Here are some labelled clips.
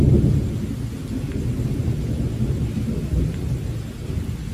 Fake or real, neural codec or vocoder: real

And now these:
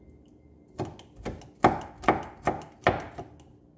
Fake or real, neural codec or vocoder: real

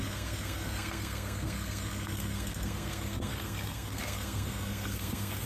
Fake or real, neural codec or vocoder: fake, codec, SNAC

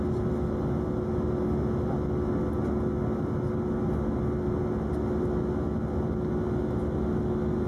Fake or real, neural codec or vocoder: real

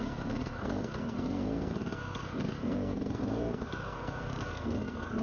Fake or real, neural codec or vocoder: fake, codec, SNAC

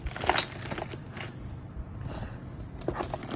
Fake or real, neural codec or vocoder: real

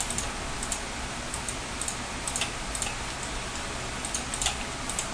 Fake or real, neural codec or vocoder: real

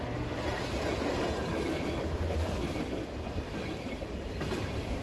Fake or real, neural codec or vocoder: real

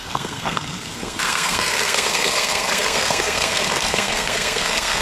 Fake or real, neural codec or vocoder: fake, codec, SNAC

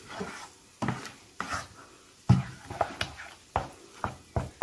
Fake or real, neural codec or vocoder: real